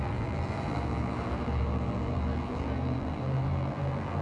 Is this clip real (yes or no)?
no